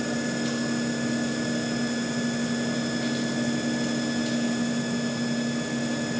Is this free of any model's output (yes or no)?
yes